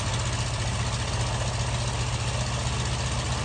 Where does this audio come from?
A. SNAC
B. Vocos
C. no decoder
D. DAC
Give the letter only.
C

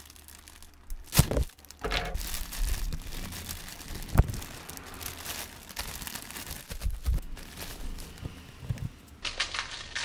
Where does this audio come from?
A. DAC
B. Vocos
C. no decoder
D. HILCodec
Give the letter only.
C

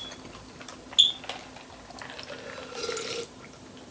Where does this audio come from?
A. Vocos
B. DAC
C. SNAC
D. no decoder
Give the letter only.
D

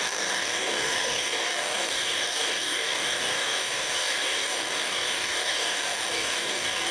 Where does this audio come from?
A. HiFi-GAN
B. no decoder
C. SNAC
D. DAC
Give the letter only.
D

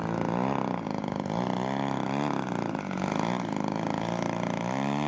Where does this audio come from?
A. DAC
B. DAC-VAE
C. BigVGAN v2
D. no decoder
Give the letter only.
D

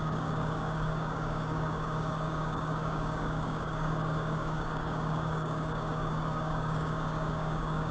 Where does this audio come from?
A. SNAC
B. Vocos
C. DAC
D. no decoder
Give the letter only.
C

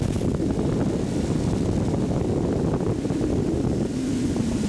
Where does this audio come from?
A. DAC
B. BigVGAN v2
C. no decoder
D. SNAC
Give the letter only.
C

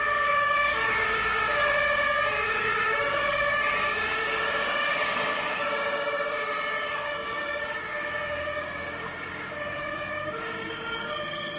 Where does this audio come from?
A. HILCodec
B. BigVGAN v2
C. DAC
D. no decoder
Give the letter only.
C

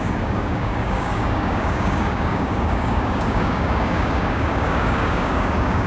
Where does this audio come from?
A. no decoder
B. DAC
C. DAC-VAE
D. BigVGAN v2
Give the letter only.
B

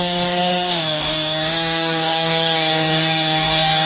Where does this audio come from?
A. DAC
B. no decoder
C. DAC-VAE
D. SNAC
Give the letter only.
A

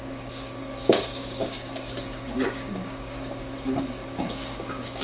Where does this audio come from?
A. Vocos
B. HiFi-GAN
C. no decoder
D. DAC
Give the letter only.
D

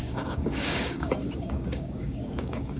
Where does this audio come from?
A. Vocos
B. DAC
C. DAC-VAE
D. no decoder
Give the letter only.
B